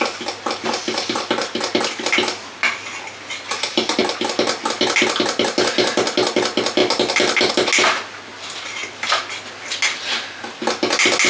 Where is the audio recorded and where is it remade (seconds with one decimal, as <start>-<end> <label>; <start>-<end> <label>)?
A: 0.0-11.3 recorded